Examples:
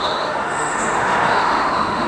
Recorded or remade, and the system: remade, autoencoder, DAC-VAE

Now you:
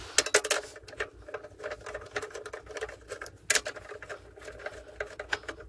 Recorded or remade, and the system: recorded